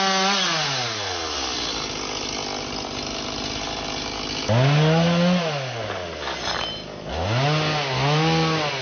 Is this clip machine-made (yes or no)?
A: no